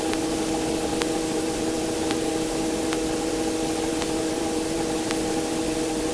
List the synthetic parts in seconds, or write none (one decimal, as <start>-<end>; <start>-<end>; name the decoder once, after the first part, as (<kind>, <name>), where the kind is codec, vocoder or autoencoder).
0.9-3.3 (vocoder, BigVGAN v2); 3.9-6.1